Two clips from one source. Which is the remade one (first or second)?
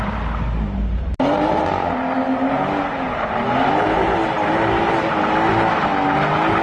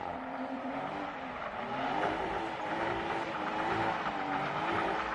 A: second